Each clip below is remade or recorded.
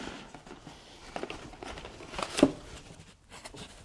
recorded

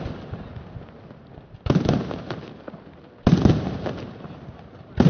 recorded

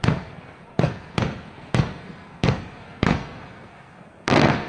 remade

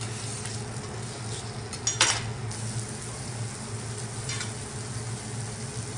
recorded